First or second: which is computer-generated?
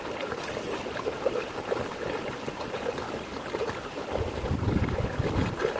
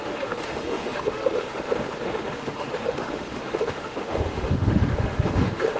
second